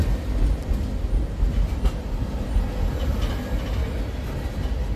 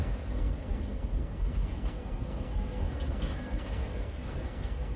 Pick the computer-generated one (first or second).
second